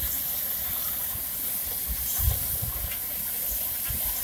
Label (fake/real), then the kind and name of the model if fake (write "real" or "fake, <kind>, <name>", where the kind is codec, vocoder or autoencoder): real